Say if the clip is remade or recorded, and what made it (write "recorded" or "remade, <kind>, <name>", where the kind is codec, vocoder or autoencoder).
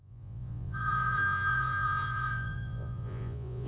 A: remade, vocoder, Vocos